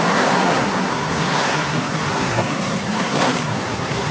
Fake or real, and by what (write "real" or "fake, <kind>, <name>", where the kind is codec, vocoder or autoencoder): fake, codec, SNAC